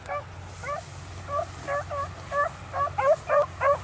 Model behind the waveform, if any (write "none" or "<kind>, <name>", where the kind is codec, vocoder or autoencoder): none